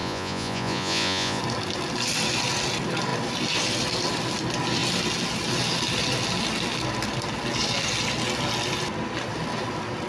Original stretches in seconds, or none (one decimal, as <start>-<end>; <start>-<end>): 1.4-10.1